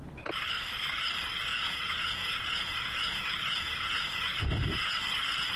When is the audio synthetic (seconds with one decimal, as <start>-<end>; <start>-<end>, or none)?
1.5-4.9